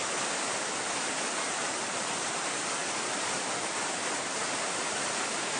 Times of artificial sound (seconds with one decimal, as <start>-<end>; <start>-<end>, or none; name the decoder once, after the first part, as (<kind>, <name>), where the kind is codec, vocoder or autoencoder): 1.7-2.4 (vocoder, BigVGAN v2)